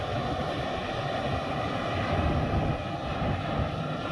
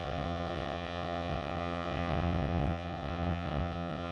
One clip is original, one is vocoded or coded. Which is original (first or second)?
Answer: first